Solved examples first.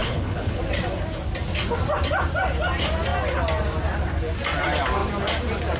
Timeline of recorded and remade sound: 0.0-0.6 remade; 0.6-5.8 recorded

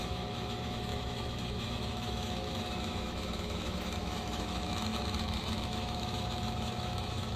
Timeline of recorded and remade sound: 0.0-7.4 remade

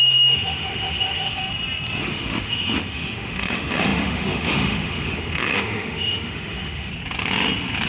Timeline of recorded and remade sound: 0.0-1.4 remade; 1.4-2.0 recorded; 2.0-6.9 remade; 6.9-7.9 recorded

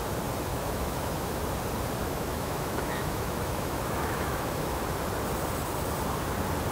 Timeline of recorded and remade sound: 0.0-0.5 recorded; 0.5-1.4 remade; 1.4-2.0 recorded; 2.0-4.8 remade; 4.8-6.7 recorded